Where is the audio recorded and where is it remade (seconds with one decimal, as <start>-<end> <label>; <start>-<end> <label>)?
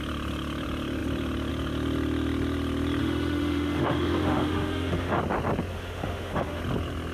0.0-3.0 recorded; 3.0-5.2 remade; 5.2-5.7 recorded; 5.7-6.6 remade; 6.6-7.1 recorded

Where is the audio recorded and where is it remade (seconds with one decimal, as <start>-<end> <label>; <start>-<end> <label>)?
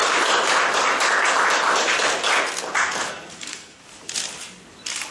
0.0-3.1 recorded; 3.1-3.8 remade; 3.8-5.1 recorded